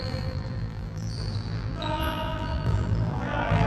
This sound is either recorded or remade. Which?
remade